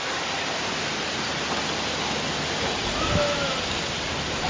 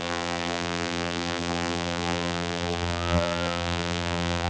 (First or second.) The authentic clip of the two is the first